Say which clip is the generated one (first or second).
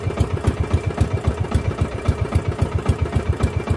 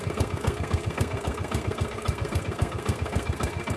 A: second